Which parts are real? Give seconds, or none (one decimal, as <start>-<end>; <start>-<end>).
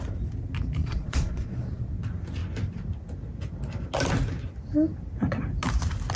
0.0-0.8; 1.9-6.2